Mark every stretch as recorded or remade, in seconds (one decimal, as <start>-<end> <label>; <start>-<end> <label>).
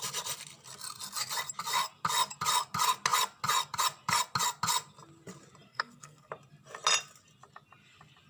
0.0-5.7 recorded; 5.7-6.3 remade; 6.3-8.3 recorded